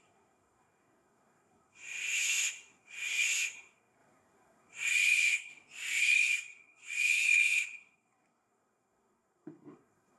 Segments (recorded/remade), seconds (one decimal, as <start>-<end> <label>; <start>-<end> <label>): 0.0-5.5 remade; 5.5-6.0 recorded; 6.0-10.2 remade